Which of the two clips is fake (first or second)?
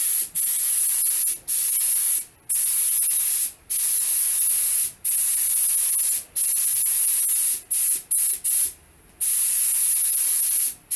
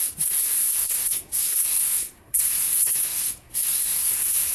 second